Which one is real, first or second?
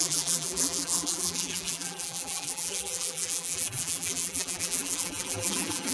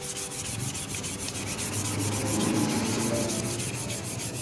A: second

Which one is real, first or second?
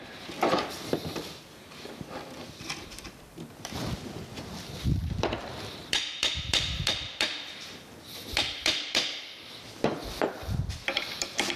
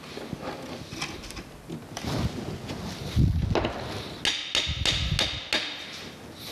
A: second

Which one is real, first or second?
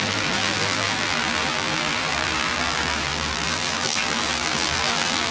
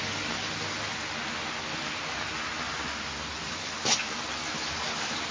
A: second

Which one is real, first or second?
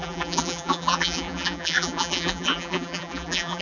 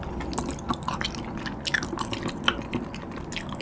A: second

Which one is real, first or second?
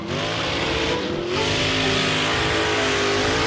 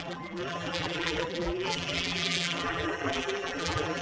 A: first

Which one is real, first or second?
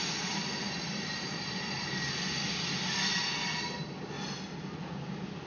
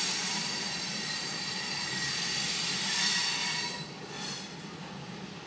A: first